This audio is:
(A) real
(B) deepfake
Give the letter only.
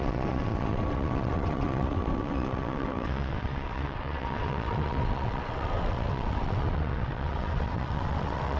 B